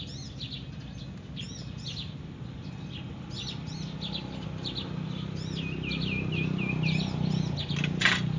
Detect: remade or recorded recorded